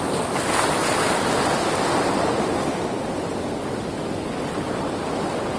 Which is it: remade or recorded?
recorded